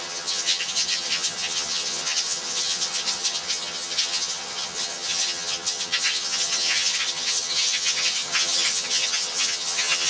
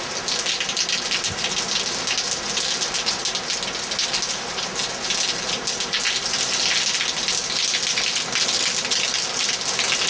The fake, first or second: first